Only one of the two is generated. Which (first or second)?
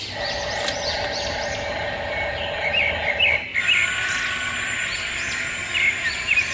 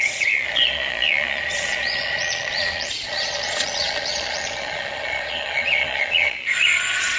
second